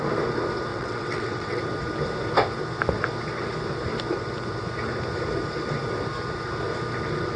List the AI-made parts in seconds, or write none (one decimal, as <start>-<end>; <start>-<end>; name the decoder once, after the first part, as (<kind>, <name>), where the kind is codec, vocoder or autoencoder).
0.7-1.6 (vocoder, WaveNeXt)